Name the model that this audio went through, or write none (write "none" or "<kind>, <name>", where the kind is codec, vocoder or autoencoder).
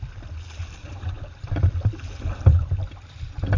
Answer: none